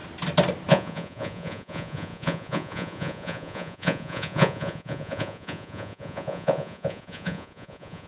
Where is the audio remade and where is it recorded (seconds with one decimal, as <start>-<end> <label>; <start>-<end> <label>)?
0.0-0.7 recorded; 0.7-8.1 remade